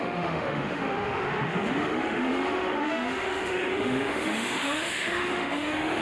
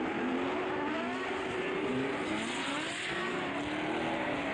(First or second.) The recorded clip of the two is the second